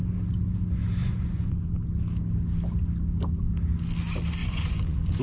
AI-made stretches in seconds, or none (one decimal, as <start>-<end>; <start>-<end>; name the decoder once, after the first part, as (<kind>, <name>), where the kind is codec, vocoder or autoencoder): 1.0-1.6 (vocoder, Vocos); 4.4-5.2